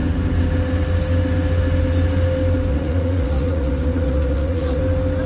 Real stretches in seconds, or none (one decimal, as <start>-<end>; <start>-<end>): 0.0-2.7; 4.8-5.3